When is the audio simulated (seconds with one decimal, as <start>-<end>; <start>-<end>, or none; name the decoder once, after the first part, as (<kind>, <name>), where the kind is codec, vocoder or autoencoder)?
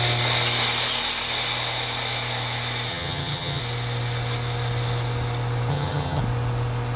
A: 2.9-3.6 (vocoder, HiFi-GAN); 5.7-6.2